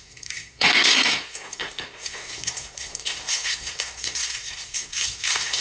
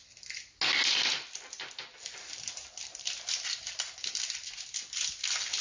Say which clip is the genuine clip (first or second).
second